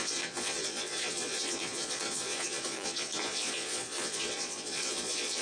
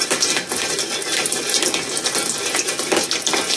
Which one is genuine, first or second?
second